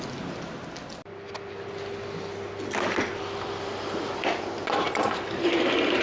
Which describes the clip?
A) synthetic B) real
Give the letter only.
B